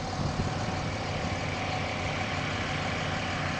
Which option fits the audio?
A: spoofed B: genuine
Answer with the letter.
B